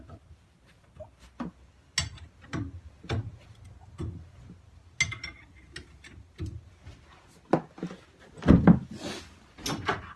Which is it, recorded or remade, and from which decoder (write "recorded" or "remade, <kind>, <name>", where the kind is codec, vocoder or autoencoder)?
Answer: recorded